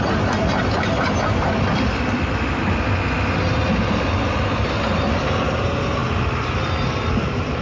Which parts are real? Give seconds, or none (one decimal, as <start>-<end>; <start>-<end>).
0.0-7.6